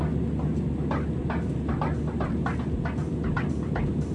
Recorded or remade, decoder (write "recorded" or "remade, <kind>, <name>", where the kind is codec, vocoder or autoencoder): recorded